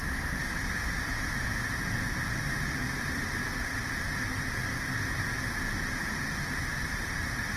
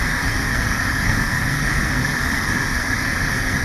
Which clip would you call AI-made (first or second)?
second